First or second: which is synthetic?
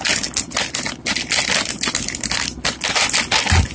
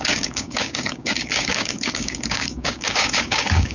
second